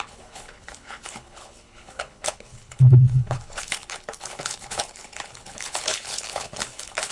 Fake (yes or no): yes